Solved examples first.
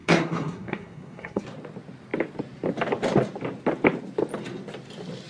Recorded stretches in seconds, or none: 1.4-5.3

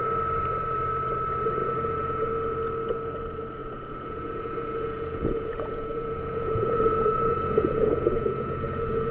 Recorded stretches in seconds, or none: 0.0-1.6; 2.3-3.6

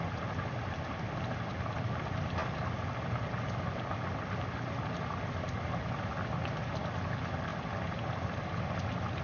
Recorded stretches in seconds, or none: 0.0-9.2